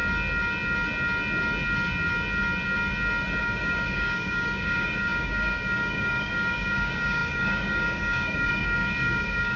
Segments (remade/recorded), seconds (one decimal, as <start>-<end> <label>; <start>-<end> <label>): 0.0-3.4 recorded; 3.4-9.6 remade